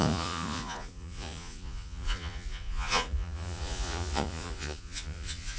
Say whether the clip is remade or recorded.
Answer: remade